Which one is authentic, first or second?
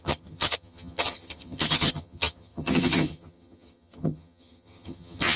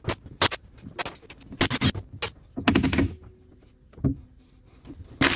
second